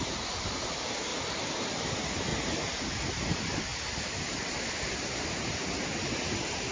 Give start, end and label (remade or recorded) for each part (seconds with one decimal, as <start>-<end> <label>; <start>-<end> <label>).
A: 0.0-1.1 remade; 1.1-1.8 recorded; 1.8-2.3 remade; 2.3-3.1 recorded; 3.1-3.7 remade; 3.7-4.7 recorded; 4.7-6.7 remade